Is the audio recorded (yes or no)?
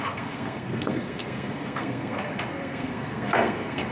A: no